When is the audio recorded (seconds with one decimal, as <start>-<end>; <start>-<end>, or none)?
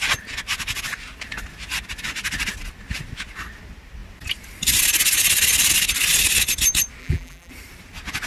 0.0-7.0; 7.5-8.3